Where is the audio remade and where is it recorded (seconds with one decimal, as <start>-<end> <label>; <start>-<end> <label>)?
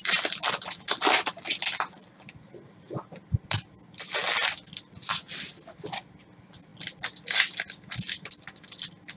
0.0-9.2 recorded